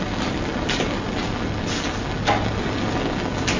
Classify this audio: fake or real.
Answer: real